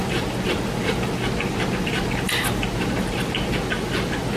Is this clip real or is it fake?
fake